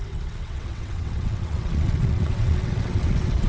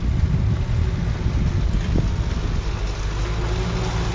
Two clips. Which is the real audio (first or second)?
second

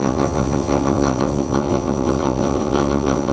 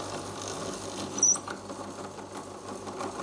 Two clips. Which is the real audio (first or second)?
second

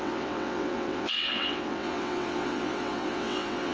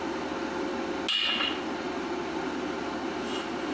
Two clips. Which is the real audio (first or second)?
second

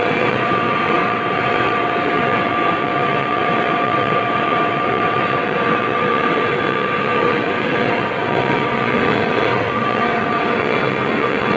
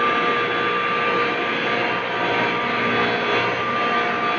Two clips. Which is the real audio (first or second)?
second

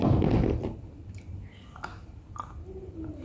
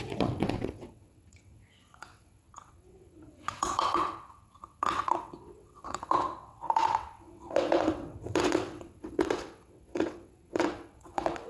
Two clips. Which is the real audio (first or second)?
first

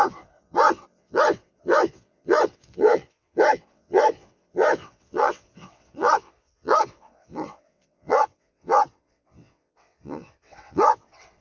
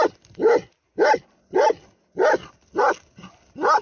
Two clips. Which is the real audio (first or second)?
second